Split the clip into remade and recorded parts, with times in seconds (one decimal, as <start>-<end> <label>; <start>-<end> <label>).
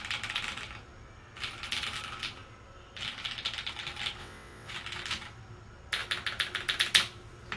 0.0-4.2 recorded; 4.2-4.7 remade; 4.7-7.6 recorded